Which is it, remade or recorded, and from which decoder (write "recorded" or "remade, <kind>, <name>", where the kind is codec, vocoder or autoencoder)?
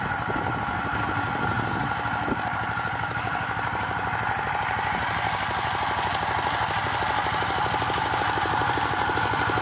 recorded